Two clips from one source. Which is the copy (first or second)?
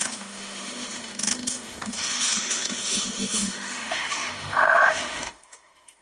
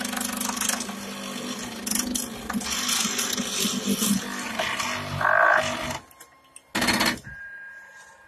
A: first